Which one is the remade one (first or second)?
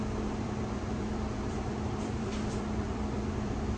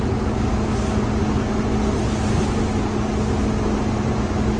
first